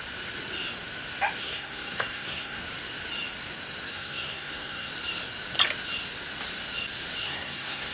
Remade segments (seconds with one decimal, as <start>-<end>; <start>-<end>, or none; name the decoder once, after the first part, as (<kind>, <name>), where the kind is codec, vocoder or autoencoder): 1.4-2.6 (codec, SNAC); 3.9-4.9; 7.2-7.9